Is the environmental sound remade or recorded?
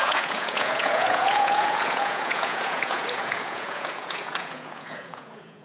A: remade